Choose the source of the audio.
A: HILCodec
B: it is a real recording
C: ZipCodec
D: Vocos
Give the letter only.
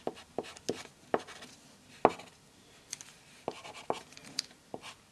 B